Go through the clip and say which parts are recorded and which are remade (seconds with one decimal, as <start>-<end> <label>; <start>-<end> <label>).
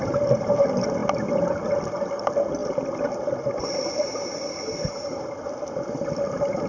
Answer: 0.0-2.6 recorded; 2.6-6.2 remade; 6.2-6.7 recorded